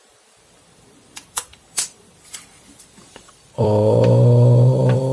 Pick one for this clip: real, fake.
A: fake